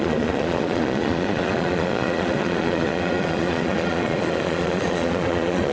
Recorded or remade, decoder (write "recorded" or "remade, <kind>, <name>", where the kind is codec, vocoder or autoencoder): remade, vocoder, Vocos